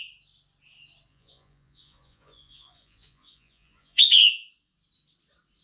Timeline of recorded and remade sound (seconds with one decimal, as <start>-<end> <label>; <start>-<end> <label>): 0.0-1.1 recorded; 1.1-4.5 remade; 4.5-5.6 recorded